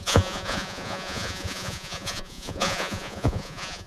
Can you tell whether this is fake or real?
fake